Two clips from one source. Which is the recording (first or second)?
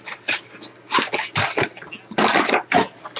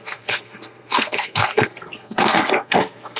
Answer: first